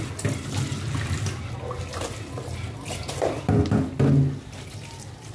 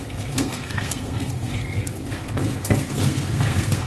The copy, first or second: second